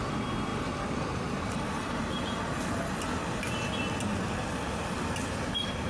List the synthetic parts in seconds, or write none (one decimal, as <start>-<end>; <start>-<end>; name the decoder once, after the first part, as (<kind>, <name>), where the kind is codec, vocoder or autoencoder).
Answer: none